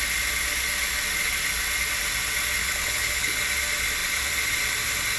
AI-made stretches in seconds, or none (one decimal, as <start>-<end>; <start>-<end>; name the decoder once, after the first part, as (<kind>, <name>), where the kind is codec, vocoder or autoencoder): 2.6-3.4 (codec, HILCodec)